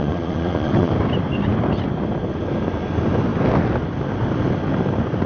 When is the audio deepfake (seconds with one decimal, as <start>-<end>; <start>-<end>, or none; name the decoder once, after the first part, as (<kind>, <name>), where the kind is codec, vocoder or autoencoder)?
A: 0.0-0.9 (vocoder, Vocos)

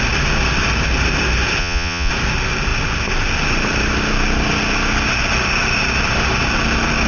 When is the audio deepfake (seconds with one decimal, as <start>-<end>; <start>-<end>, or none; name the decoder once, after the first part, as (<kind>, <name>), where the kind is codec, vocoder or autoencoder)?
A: 1.6-2.1 (vocoder, Vocos)

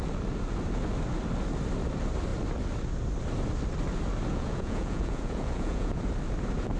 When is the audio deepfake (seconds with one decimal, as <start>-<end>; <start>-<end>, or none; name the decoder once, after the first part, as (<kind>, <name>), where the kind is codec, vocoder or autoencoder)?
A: 4.3-6.0 (vocoder, Vocos)

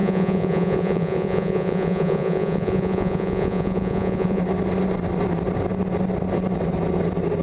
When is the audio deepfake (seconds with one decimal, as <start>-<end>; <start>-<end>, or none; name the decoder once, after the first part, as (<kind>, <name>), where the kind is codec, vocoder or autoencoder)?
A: 0.0-4.4 (vocoder, Vocos)

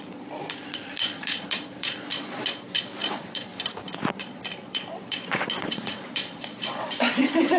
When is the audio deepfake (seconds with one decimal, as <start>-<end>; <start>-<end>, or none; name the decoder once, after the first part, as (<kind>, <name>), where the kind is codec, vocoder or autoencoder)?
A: 0.0-3.5 (vocoder, Vocos); 4.1-7.6